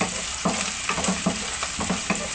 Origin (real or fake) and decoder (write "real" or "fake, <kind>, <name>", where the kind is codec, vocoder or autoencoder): real